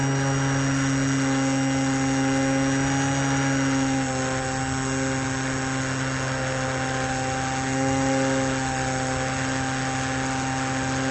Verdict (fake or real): real